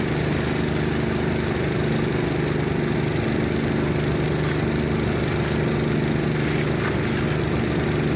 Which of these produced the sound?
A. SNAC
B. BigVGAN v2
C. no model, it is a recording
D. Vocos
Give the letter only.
C